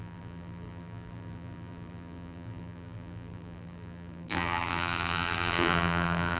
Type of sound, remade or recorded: remade